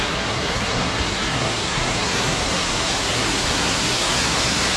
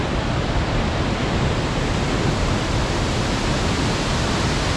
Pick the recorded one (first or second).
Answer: second